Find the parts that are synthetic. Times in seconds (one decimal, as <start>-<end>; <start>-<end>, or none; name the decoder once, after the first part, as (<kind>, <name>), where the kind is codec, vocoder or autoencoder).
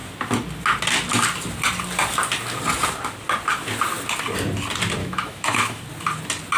5.0-5.8 (autoencoder, DAC-VAE)